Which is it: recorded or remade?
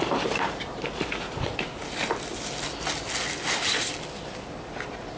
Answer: recorded